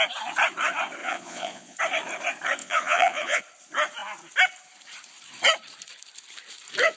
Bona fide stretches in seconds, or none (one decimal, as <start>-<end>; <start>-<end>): 0.0-1.0; 1.8-2.6; 3.4-7.0